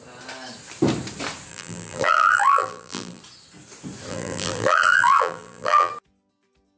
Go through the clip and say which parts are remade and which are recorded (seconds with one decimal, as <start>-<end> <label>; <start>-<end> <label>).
0.0-1.5 recorded; 1.5-3.2 remade; 3.2-4.1 recorded; 4.1-5.9 remade; 5.9-6.8 recorded

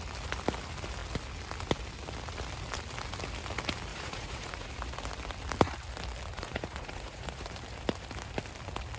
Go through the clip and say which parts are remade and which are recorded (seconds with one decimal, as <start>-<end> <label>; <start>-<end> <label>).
0.0-3.9 recorded; 3.9-4.7 remade; 4.7-6.3 recorded; 6.3-7.4 remade; 7.4-9.0 recorded

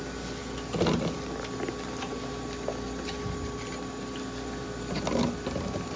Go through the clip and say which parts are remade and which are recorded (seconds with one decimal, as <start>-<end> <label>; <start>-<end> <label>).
0.0-6.0 recorded